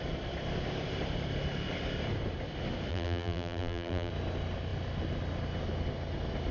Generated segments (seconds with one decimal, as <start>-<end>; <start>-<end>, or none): 2.9-4.1